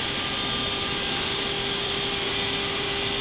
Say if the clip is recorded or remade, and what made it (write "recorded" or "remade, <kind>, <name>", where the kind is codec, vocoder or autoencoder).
remade, vocoder, BigVGAN v2